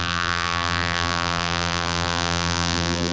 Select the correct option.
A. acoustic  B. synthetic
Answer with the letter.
B